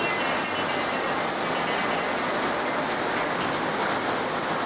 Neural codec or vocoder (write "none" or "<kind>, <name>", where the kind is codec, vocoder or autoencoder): none